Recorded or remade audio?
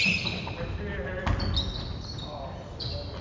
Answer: recorded